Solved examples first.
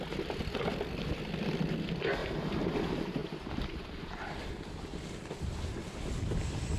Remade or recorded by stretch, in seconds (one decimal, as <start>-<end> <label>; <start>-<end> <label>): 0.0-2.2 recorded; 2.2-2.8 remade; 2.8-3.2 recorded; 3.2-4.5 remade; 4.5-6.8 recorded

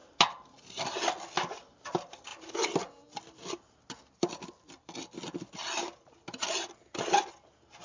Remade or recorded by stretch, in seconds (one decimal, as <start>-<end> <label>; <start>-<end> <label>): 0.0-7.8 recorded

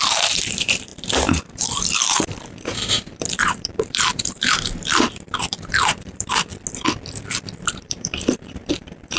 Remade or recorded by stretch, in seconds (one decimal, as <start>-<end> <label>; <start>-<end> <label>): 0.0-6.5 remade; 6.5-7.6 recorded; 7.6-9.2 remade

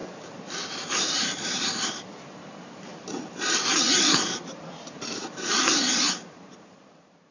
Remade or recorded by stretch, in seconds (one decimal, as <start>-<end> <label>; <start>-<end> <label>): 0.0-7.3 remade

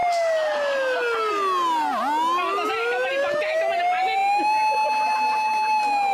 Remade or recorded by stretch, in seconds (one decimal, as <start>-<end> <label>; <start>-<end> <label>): 0.0-6.1 recorded

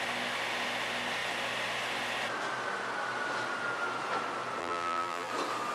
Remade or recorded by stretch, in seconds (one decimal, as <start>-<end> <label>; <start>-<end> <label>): 0.0-4.6 recorded; 4.6-5.3 remade; 5.3-5.7 recorded

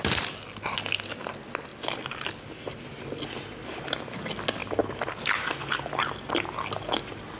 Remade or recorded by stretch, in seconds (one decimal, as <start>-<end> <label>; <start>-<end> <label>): 0.0-1.7 recorded; 1.7-3.0 remade; 3.0-4.6 recorded; 4.6-5.8 remade; 5.8-7.4 recorded

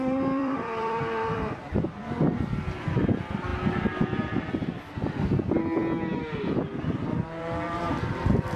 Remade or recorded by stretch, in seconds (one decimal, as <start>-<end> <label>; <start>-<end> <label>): 0.0-5.8 remade; 5.8-7.4 recorded; 7.4-8.6 remade